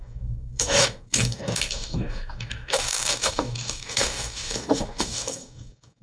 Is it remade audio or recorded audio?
remade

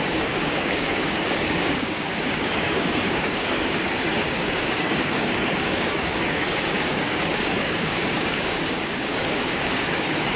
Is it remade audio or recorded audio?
remade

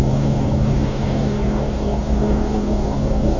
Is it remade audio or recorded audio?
remade